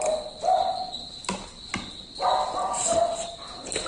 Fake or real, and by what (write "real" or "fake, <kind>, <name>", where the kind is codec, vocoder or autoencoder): real